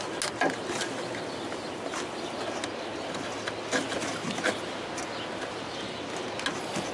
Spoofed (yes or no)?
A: no